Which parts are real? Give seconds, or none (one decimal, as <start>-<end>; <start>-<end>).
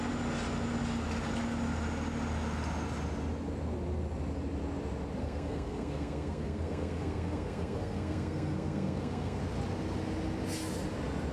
0.0-5.2; 9.4-11.3